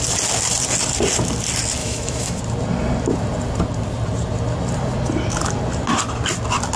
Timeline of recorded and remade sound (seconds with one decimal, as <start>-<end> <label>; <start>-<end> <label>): 0.0-1.8 recorded; 1.8-2.4 remade; 2.4-6.8 recorded